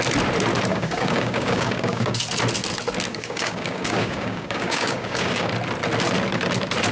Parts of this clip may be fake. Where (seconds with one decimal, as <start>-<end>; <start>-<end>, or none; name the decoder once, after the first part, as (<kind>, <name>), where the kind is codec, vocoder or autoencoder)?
0.7-2.2 (codec, DAC); 3.1-5.5